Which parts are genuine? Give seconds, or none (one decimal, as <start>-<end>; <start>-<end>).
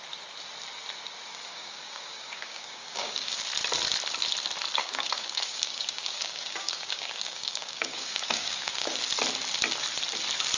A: 0.0-1.3; 3.4-4.8; 9.0-10.6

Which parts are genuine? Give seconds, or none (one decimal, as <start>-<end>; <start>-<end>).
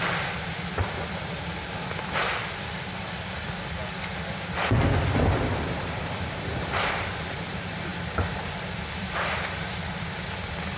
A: 3.8-6.1; 7.9-8.9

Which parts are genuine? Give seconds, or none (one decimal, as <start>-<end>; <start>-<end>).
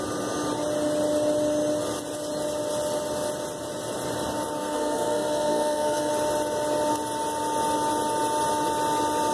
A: 0.0-4.6; 6.1-9.3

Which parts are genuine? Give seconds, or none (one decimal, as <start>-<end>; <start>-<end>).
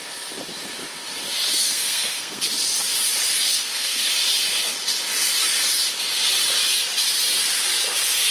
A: 0.0-1.5; 2.5-3.5; 4.1-8.3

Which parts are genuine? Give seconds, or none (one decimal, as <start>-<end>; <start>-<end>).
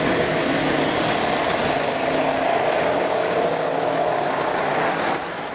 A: 0.0-2.5; 4.6-5.5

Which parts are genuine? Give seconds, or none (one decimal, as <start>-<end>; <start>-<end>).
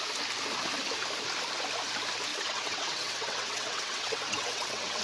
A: 0.0-2.3